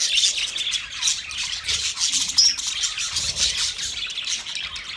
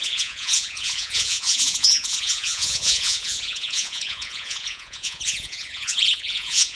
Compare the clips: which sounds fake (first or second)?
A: second